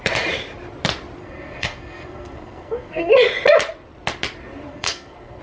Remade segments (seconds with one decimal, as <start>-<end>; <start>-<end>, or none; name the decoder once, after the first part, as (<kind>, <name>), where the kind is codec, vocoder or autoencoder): 1.2-3.1 (codec, SNAC); 4.7-5.4